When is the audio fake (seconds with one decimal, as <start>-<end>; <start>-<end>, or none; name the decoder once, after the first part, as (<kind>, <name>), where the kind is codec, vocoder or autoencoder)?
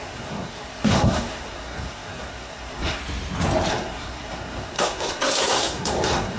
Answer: 0.0-3.0 (codec, SNAC); 3.7-6.4